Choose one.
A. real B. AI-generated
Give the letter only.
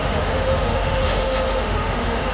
B